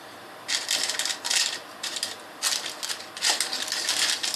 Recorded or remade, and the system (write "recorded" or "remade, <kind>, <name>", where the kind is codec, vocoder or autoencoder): recorded